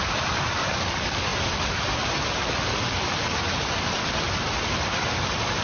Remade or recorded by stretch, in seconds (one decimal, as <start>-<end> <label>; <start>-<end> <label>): 0.0-1.3 remade; 1.3-3.9 recorded; 3.9-5.6 remade